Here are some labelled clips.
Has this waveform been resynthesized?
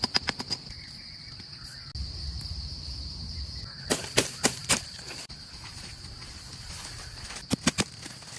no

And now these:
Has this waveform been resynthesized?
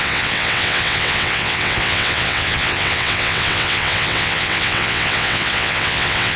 yes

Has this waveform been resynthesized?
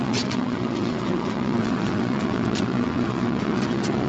yes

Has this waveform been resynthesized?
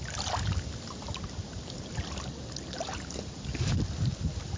no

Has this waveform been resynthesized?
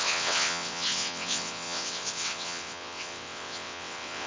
yes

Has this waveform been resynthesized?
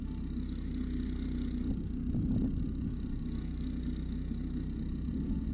no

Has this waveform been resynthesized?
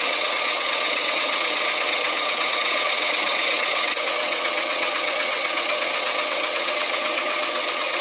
yes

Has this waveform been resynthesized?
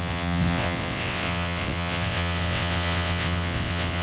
yes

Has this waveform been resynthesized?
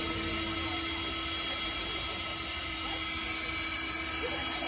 no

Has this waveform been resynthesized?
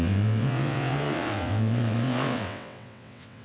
yes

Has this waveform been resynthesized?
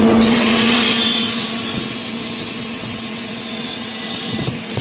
yes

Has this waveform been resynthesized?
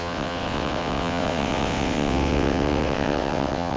yes